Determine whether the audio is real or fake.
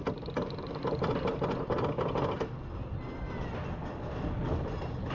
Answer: real